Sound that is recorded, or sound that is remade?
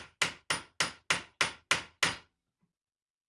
recorded